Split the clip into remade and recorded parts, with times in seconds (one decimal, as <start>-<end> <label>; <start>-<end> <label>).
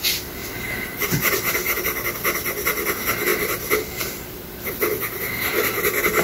0.0-0.4 recorded; 0.4-1.8 remade; 1.8-3.3 recorded; 3.3-4.7 remade; 4.7-6.2 recorded